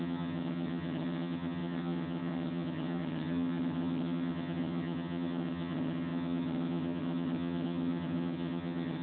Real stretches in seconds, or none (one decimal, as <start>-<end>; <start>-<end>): none